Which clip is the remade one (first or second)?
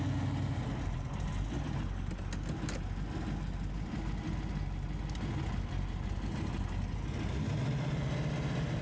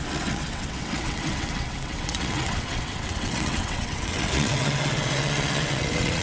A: second